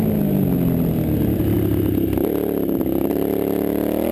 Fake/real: real